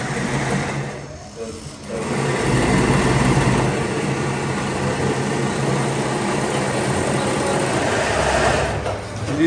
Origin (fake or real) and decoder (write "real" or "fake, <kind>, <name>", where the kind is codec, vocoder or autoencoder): real